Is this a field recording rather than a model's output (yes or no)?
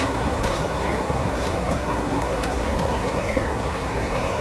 no